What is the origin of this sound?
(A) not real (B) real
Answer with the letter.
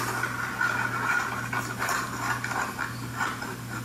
B